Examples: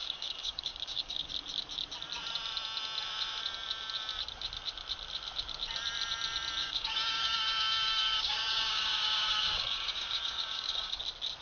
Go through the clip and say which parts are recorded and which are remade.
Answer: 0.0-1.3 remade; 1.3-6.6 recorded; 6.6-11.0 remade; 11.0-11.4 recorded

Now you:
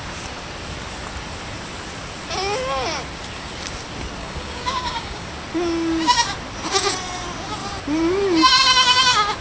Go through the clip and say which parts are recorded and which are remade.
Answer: 0.0-4.2 recorded; 4.2-5.3 remade; 5.3-9.4 recorded